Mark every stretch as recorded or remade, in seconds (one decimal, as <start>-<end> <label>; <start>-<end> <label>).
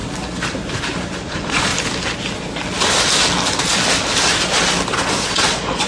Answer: 0.0-1.2 recorded; 1.2-1.7 remade; 1.7-4.9 recorded; 4.9-5.9 remade